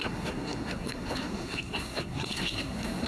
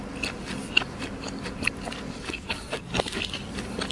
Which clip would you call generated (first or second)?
first